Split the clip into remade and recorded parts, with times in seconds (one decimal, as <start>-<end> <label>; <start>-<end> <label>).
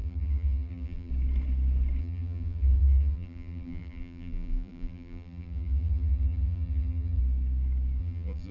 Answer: 0.0-1.1 remade; 1.1-2.0 recorded; 2.0-7.2 remade; 7.2-8.0 recorded; 8.0-8.5 remade